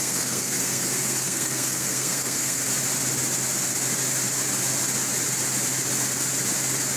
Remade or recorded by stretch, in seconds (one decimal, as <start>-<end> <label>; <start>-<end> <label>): 0.0-2.6 remade; 2.6-7.0 recorded